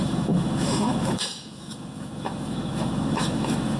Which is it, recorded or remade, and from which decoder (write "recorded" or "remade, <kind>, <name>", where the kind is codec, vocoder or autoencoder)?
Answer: remade, autoencoder, DAC-VAE